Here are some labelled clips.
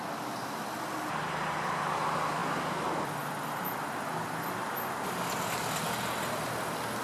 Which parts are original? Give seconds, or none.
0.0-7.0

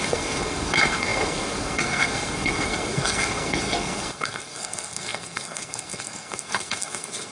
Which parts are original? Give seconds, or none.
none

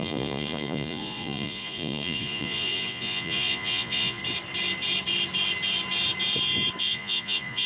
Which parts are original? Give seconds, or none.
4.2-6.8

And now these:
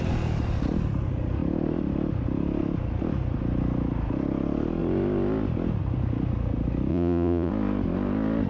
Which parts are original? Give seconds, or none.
0.0-6.9; 7.5-8.5

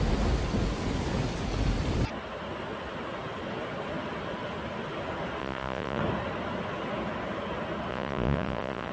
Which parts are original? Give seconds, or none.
0.0-5.4; 6.0-7.9

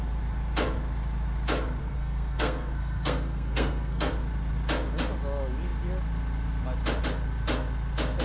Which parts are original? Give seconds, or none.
0.0-1.8; 4.1-8.2

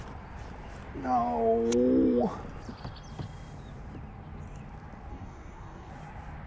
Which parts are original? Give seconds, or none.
0.0-5.1; 5.9-6.5

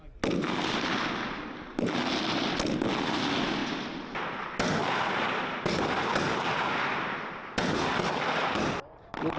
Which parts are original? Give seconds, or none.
0.0-9.4